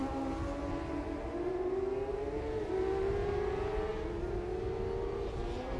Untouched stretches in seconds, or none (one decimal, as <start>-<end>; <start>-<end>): 0.0-5.8